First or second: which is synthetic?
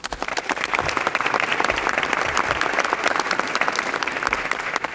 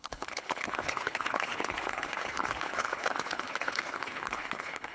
second